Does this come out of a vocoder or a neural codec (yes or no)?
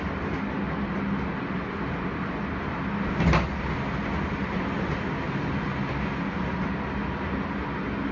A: no